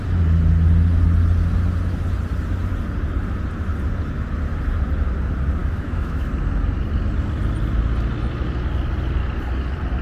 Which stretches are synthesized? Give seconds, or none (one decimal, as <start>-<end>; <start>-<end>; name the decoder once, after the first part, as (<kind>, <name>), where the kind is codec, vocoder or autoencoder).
5.6-6.3 (autoencoder, DAC-VAE)